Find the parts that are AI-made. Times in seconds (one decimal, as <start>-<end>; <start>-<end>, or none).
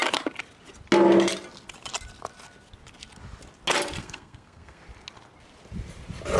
4.0-4.8